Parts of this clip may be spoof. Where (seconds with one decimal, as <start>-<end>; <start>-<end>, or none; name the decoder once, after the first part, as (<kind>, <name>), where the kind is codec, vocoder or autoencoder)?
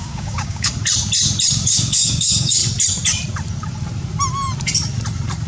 0.0-0.7 (codec, DAC); 1.5-2.6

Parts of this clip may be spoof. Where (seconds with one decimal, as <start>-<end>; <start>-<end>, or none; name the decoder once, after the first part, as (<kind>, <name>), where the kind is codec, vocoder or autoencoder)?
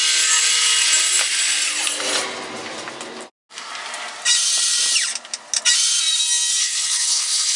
6.6-7.6 (codec, HILCodec)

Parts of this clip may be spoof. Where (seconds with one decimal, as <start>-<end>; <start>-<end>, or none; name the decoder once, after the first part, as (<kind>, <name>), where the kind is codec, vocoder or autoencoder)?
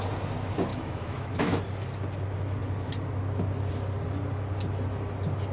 0.7-1.6 (autoencoder, DAC-VAE)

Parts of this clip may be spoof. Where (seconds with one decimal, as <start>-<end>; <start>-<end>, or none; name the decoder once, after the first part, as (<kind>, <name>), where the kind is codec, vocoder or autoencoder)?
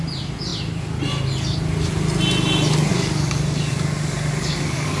2.9-5.0 (codec, DAC)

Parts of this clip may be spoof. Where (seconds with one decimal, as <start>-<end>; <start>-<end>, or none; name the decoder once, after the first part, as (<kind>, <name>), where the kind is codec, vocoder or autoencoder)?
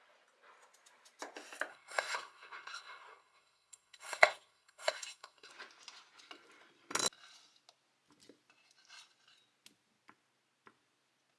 1.7-5.5 (codec, SNAC)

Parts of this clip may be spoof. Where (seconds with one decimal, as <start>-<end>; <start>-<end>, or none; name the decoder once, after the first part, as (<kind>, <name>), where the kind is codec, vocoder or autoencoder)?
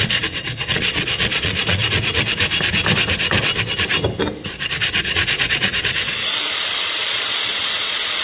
0.0-1.8 (vocoder, Vocos); 5.0-8.2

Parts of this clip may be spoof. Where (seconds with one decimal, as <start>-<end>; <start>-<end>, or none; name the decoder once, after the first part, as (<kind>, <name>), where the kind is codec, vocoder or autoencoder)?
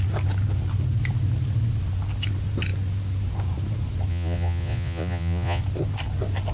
4.1-5.6 (vocoder, Vocos)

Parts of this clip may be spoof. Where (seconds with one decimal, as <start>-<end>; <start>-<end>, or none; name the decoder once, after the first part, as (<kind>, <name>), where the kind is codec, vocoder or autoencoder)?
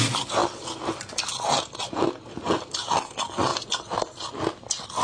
none